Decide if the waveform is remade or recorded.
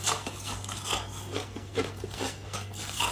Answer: remade